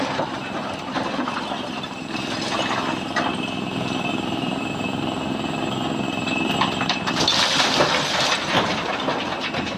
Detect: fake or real real